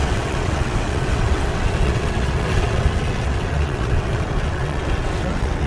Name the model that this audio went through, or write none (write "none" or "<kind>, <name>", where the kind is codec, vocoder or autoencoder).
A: vocoder, WaveNeXt